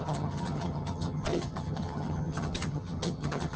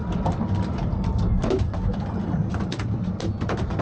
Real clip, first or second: second